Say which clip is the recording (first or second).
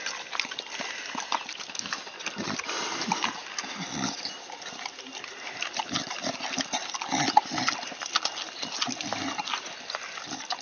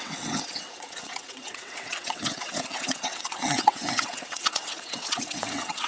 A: first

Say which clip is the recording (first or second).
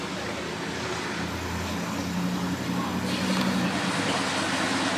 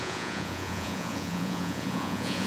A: first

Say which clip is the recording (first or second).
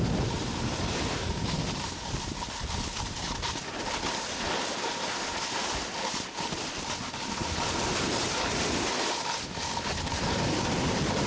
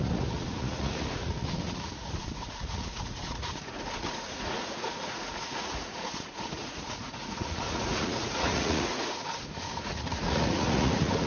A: first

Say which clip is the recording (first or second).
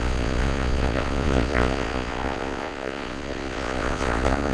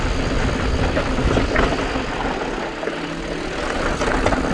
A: second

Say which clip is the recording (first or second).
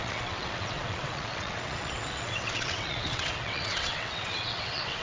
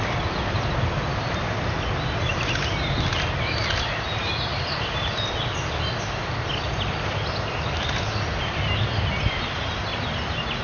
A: second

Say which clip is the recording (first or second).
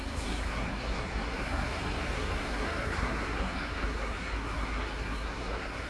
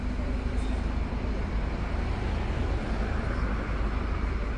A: second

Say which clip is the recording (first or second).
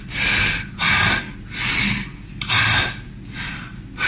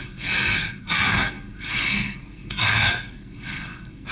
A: first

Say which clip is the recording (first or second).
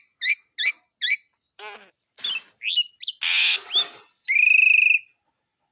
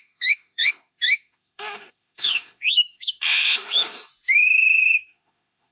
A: first